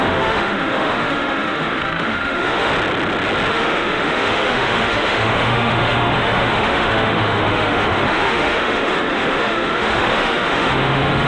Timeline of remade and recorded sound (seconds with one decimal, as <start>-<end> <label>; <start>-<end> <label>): 0.0-2.7 remade; 2.7-3.5 recorded; 3.5-11.3 remade